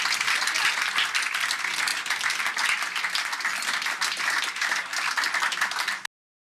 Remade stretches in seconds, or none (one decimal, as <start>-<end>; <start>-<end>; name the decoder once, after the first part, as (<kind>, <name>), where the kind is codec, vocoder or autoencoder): none

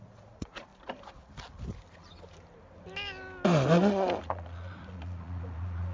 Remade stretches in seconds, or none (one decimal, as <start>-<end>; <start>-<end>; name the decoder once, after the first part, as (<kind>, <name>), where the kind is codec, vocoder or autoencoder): 0.0-0.7 (vocoder, Vocos); 4.2-5.9

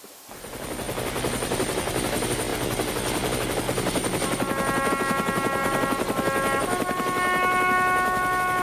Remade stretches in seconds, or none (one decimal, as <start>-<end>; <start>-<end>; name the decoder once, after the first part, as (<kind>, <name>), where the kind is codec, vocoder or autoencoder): none

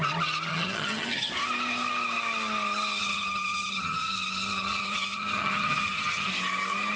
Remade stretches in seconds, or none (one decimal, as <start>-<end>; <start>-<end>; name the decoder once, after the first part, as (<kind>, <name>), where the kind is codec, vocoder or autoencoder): 0.5-1.3 (vocoder, HiFi-GAN); 3.0-6.3

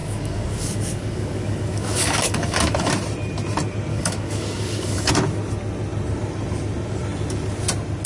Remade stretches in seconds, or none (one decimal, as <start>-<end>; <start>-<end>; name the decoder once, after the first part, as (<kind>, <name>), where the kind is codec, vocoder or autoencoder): 0.0-2.9 (codec, DAC); 3.9-5.1